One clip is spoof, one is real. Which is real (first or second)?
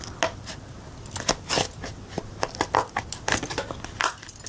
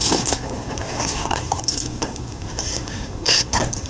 first